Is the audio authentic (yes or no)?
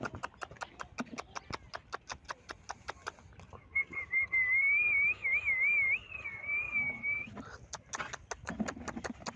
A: yes